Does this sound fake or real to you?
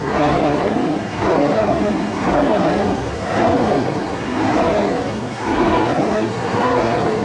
fake